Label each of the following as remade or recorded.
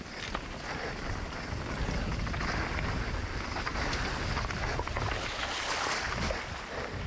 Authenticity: recorded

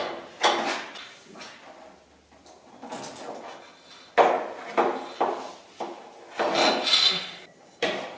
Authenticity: recorded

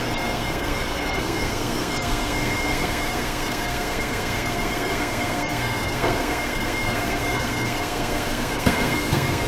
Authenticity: remade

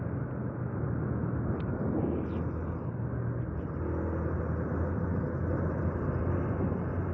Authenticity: recorded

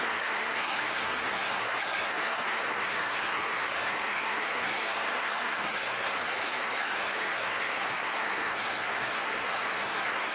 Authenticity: remade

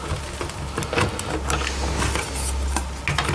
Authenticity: recorded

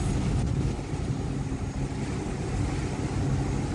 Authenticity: recorded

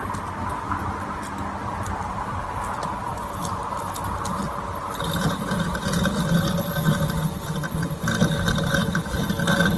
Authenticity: recorded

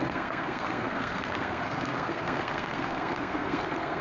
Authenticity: remade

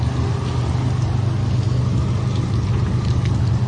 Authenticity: recorded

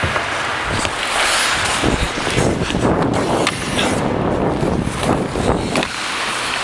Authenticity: recorded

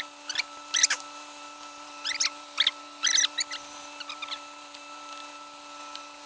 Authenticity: recorded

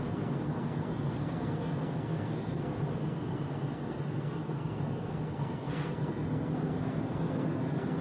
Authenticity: remade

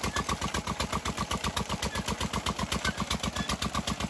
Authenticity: recorded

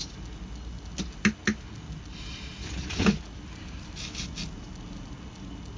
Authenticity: recorded